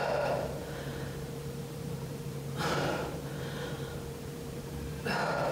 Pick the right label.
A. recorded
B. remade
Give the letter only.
B